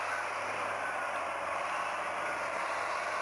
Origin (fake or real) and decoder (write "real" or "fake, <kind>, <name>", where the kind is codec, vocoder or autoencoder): real